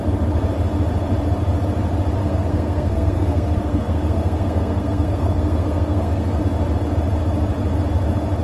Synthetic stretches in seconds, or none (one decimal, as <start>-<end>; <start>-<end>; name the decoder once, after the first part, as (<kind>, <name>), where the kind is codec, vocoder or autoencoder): 2.2-6.4 (codec, SNAC)